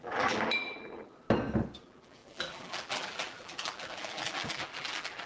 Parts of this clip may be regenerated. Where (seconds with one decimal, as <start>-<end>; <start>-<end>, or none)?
0.0-1.1; 1.8-5.3